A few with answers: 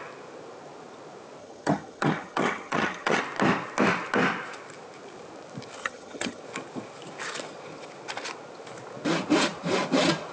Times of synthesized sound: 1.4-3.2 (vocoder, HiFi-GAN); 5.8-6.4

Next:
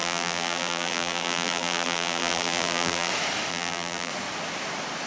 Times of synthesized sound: 0.0-3.1 (vocoder, BigVGAN v2); 3.5-4.1

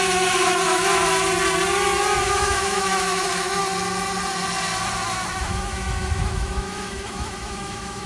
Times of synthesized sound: 0.0-1.0 (autoencoder, DAC-VAE); 2.2-3.6; 5.4-8.1

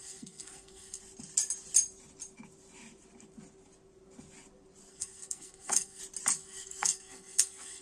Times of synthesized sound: 0.0-1.0 (codec, SNAC); 4.9-6.0; 6.4-7.8

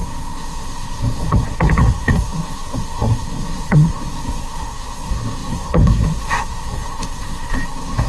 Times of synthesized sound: 0.0-8.1 (codec, SNAC)